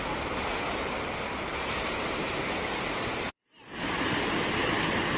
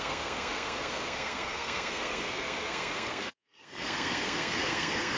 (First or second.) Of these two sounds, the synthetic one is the second